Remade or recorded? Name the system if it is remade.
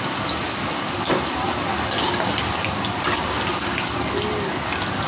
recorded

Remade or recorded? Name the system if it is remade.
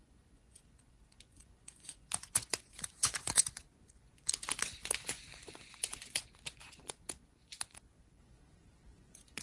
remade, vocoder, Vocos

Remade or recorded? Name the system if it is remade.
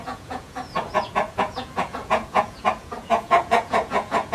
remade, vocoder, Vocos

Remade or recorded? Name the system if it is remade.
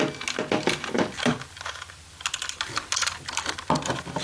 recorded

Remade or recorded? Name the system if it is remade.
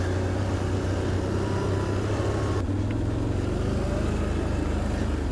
recorded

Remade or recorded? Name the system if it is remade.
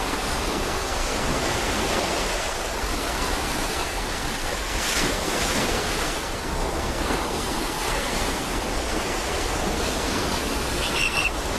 remade, codec, SNAC